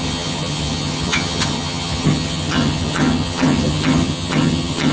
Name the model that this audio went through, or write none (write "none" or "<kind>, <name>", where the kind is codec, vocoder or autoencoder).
vocoder, HiFi-GAN